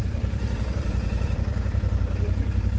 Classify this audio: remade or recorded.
remade